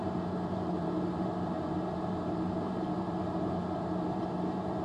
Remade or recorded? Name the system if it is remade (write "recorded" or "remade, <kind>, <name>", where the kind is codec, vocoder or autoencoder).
remade, vocoder, BigVGAN v2